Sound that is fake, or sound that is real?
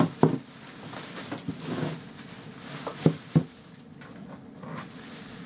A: real